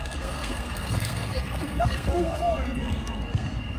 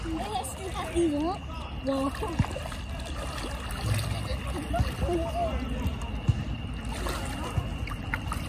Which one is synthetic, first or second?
first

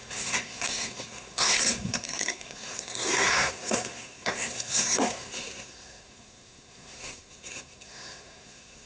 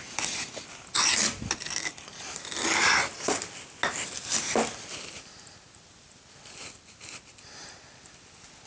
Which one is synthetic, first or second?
first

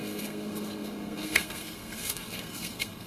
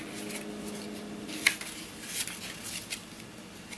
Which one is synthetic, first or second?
first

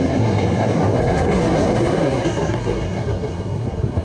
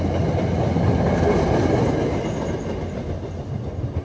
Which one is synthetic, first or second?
first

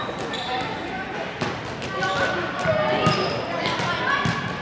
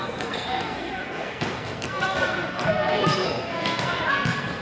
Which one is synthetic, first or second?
second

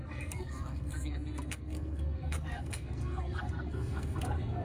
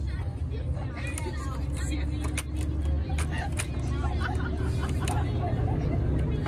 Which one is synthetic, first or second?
first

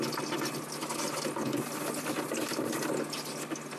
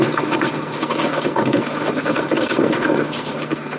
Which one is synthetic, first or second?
second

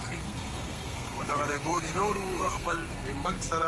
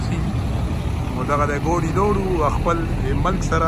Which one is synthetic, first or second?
first